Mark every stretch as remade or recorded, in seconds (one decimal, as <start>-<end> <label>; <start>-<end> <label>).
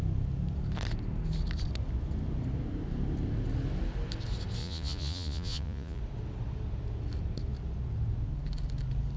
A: 0.0-4.6 recorded; 4.6-6.0 remade; 6.0-9.2 recorded